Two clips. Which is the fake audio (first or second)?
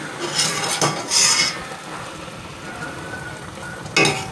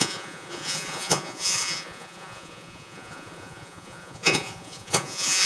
second